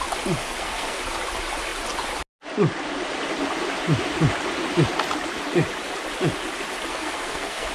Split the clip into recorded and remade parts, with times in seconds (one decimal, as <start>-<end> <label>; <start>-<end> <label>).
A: 0.0-0.4 recorded; 0.4-1.0 remade; 1.0-6.9 recorded; 6.9-7.7 remade